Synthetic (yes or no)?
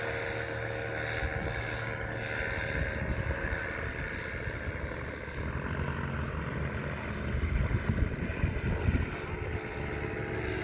no